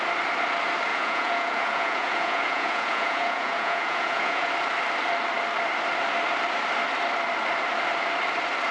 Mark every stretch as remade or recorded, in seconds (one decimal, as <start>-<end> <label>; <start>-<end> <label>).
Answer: 0.0-0.9 recorded; 0.9-4.5 remade; 4.5-8.7 recorded